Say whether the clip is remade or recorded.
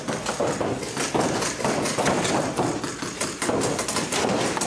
recorded